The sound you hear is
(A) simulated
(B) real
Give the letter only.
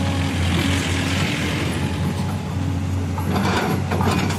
B